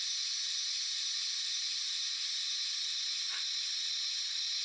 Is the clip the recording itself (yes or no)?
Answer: yes